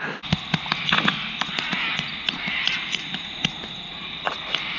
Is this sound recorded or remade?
recorded